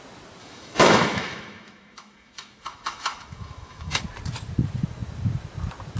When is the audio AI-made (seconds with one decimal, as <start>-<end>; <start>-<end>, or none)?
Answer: 0.4-4.0